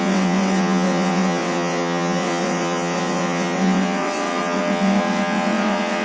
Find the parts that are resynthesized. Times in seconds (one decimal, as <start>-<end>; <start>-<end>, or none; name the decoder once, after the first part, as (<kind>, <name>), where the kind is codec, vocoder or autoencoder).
0.0-6.0 (vocoder, WaveNeXt)